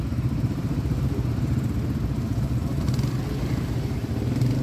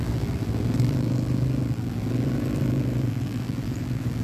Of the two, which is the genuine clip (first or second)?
first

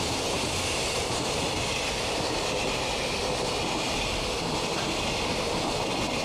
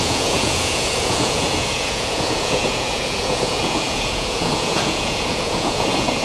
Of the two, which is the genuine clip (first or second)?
first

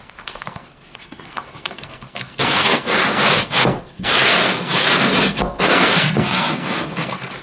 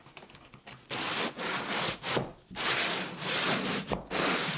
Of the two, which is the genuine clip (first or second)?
second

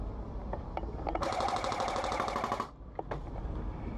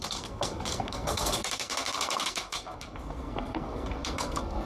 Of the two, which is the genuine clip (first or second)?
first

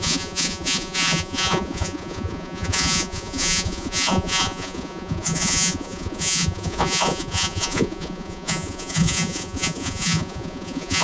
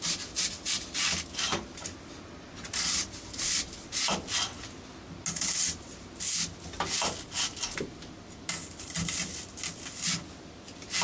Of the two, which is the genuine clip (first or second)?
second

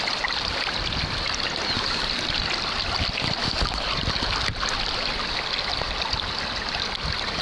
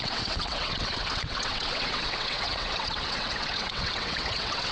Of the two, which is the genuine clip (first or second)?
first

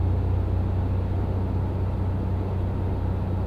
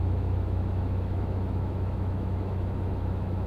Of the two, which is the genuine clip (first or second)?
first